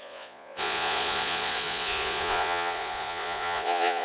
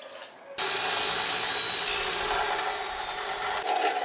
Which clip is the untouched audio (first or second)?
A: second